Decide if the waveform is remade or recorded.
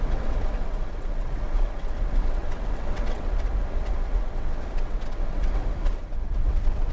remade